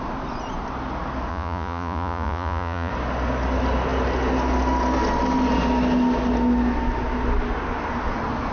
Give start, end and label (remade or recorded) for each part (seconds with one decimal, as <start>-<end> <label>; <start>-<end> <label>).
0.0-1.3 recorded; 1.3-2.9 remade; 2.9-8.5 recorded